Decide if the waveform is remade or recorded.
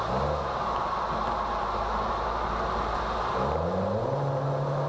recorded